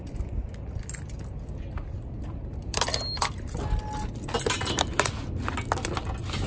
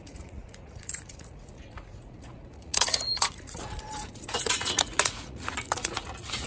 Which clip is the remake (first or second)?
second